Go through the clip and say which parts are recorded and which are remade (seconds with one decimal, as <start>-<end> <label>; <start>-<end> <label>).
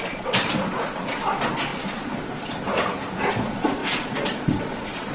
0.0-2.7 remade; 2.7-3.3 recorded; 3.3-5.1 remade